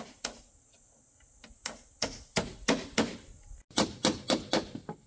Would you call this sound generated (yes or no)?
no